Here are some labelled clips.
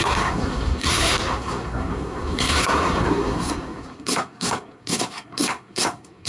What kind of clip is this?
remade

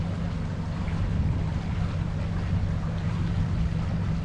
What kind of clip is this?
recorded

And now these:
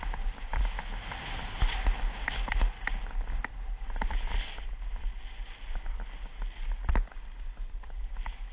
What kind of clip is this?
recorded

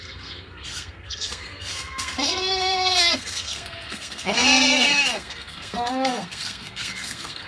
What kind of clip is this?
remade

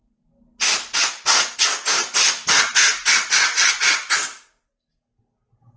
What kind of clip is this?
recorded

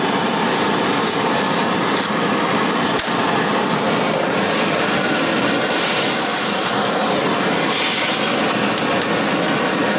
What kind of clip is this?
recorded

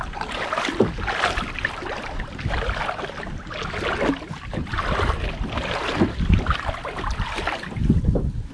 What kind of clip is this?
recorded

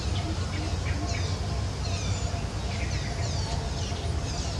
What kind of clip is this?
recorded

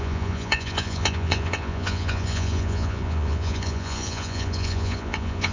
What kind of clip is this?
remade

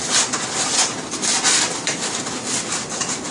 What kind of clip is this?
recorded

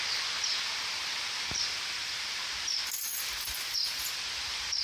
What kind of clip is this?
recorded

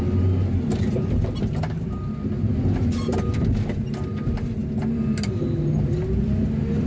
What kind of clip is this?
recorded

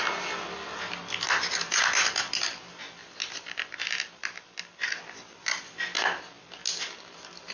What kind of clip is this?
recorded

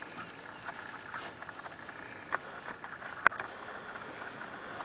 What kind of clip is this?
recorded